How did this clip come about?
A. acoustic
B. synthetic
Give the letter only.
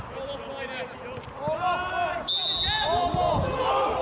A